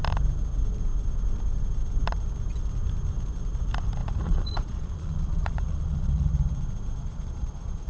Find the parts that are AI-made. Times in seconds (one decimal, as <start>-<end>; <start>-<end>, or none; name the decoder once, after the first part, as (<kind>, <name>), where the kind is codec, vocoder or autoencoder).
4.0-6.3 (vocoder, Vocos); 7.0-7.9